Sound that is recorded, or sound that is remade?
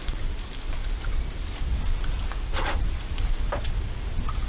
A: recorded